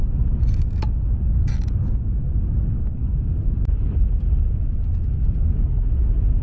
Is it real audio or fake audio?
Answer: real